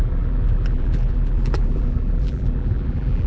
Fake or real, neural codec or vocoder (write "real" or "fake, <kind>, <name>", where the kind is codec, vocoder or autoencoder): fake, vocoder, BigVGAN v2